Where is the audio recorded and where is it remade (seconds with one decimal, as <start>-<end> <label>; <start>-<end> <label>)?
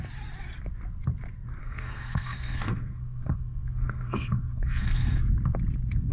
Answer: 0.0-1.6 recorded; 1.6-5.3 remade; 5.3-6.1 recorded